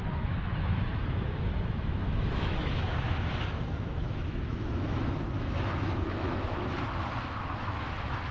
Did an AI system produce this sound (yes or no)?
yes